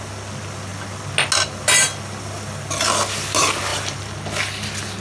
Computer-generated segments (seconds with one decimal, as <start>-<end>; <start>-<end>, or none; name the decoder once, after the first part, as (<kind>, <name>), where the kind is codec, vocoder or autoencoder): none